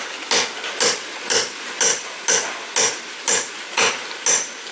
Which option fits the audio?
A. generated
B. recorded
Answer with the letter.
B